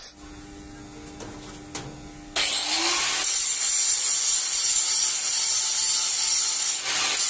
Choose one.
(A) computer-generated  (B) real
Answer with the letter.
B